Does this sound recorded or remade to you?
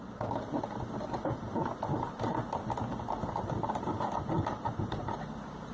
recorded